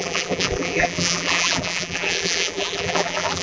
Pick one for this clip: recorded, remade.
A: remade